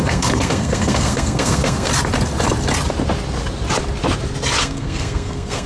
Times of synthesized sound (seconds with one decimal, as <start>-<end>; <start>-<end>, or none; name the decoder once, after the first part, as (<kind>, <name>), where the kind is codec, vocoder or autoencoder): 0.0-1.9 (codec, SNAC); 4.6-5.7